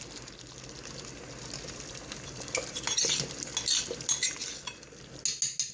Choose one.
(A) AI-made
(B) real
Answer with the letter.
B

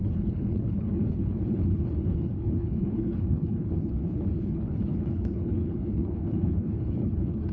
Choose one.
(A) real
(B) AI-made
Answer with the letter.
B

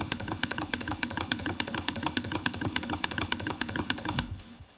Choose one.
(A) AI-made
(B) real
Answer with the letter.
A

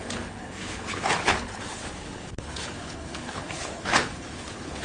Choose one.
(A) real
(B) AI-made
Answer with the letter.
B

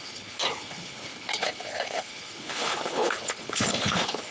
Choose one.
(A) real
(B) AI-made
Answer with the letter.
B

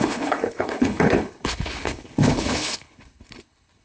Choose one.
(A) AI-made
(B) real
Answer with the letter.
A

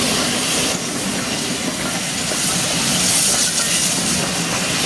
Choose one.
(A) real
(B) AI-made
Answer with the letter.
A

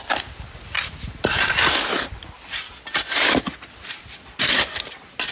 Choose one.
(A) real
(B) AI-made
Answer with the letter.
A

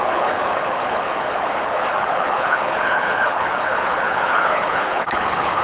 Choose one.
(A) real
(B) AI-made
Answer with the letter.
B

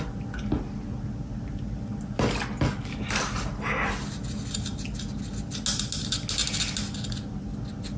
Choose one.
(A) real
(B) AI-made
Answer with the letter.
A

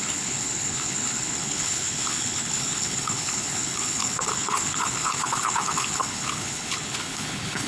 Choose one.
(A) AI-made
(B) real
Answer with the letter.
A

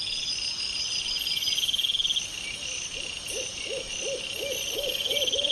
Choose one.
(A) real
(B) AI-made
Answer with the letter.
A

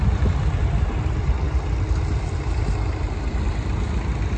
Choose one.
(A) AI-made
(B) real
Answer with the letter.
B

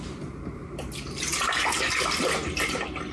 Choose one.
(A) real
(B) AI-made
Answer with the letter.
A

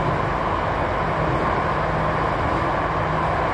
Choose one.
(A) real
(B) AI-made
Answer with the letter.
A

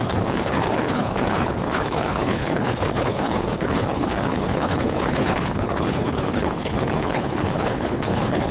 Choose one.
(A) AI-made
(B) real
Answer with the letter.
A